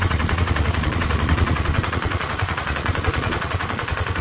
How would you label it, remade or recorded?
remade